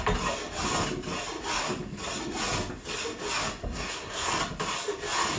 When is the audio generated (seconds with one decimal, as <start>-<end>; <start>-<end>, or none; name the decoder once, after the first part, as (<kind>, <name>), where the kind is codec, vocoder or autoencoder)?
3.6-4.3 (codec, SNAC)